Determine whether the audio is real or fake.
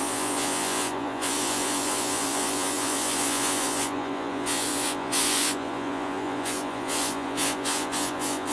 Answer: fake